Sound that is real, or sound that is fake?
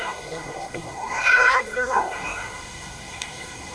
fake